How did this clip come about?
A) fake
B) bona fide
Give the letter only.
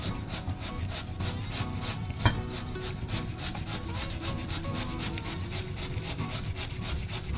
B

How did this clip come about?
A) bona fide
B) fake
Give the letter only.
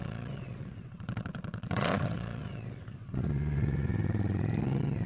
B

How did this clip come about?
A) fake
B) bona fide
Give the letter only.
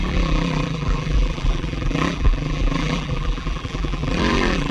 A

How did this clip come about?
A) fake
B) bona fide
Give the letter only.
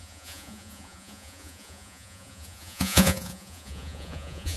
A